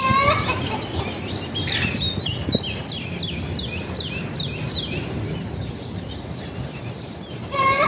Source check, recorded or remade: recorded